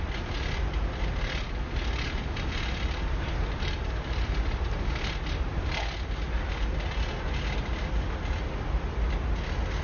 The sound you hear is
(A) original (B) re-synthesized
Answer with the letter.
A